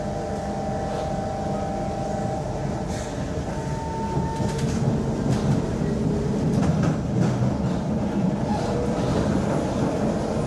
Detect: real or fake real